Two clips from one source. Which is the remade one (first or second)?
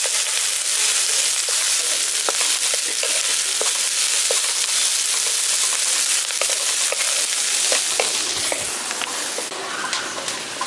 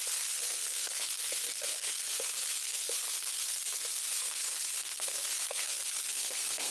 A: second